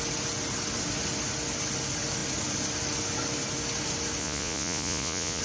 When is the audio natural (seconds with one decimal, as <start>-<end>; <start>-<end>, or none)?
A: 0.0-4.2